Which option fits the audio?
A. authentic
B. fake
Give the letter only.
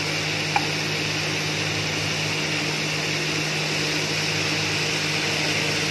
A